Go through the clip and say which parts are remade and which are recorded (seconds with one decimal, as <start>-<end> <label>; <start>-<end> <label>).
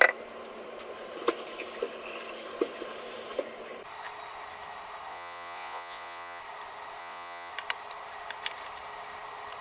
0.0-5.1 recorded; 5.1-6.4 remade; 6.4-7.0 recorded; 7.0-7.5 remade; 7.5-9.6 recorded